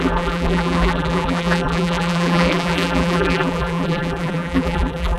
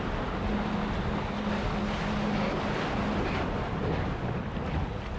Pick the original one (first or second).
second